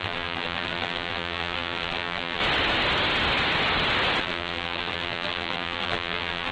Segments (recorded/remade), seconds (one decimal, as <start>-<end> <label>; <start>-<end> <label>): 0.0-2.4 remade; 2.4-4.2 recorded; 4.2-6.5 remade